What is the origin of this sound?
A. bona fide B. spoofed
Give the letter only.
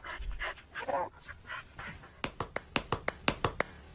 A